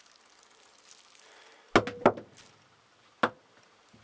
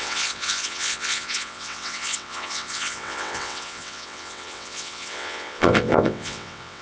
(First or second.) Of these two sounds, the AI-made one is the second